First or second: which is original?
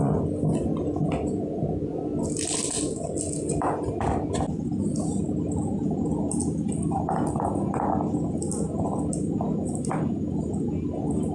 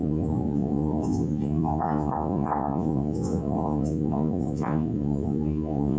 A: first